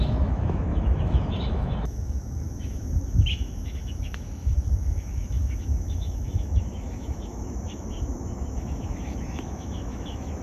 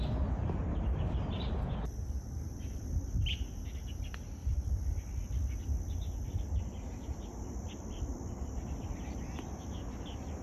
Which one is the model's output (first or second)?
first